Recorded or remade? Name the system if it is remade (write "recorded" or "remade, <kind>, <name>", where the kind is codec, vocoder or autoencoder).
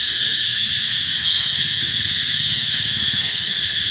remade, codec, SNAC